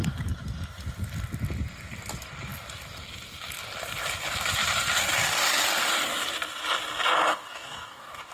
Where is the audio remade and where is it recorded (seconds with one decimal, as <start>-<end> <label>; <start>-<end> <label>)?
0.0-7.3 recorded; 7.3-8.3 remade